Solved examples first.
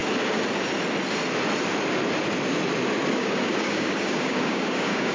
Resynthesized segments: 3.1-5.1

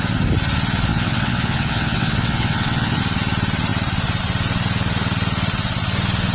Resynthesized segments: 0.9-3.0

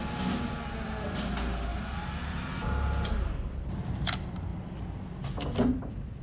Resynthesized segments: none

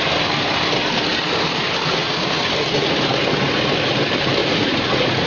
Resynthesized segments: 2.0-2.5; 4.4-5.3